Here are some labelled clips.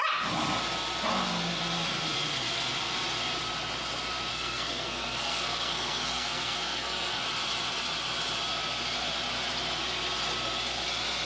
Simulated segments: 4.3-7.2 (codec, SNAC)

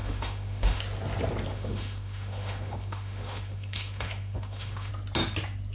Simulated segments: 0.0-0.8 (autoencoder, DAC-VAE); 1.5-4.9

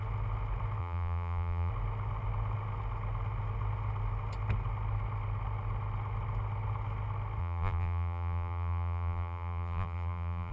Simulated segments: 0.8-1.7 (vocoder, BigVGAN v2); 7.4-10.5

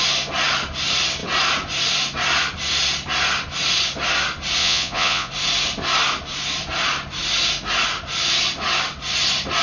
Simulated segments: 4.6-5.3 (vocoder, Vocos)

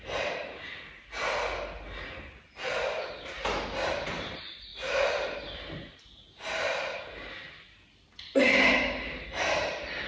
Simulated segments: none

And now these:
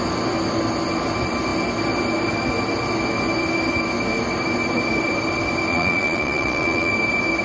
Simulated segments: 5.7-6.9 (vocoder, Vocos)